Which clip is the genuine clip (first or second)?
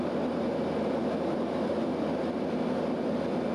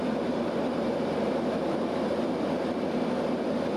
first